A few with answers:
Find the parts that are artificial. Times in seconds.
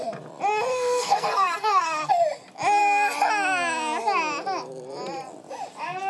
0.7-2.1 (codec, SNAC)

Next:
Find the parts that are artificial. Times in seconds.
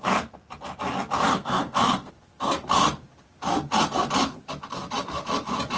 1.3-2.1 (codec, SNAC)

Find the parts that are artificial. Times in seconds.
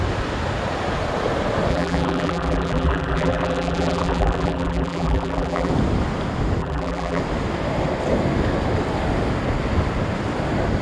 1.7-5.7 (vocoder, BigVGAN v2); 6.6-7.2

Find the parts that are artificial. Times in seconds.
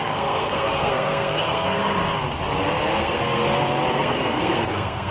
0.0-2.0 (codec, SNAC); 3.0-3.4; 3.9-5.1